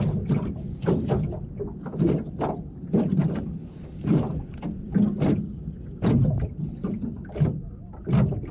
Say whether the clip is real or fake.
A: real